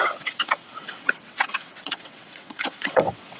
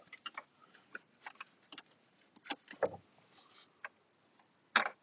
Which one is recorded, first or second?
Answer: second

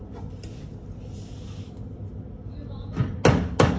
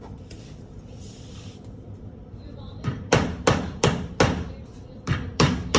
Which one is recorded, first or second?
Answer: first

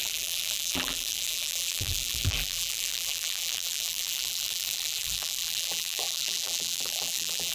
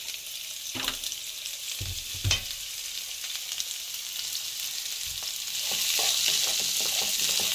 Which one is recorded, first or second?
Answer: second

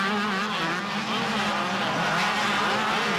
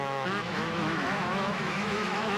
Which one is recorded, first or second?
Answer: first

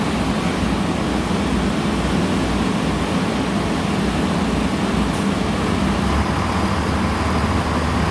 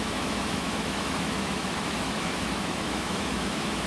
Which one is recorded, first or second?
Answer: first